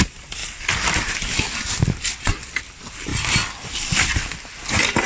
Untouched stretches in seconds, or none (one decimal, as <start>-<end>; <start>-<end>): 0.0-5.1